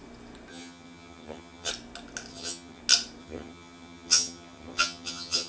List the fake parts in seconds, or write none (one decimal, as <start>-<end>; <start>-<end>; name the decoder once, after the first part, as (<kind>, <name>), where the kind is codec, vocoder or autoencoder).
0.5-1.7 (vocoder, HiFi-GAN); 2.3-2.8; 3.2-5.5